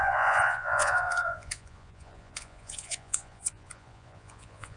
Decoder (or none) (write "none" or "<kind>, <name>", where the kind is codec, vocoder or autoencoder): vocoder, Vocos